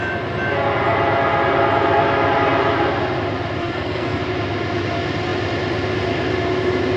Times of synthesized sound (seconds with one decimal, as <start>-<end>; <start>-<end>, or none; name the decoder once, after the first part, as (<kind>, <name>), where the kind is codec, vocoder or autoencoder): 3.6-4.2 (codec, SNAC)